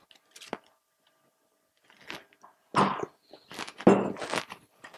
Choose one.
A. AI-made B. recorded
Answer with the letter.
B